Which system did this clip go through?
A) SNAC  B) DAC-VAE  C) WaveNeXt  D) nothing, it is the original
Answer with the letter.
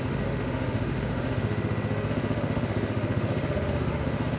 B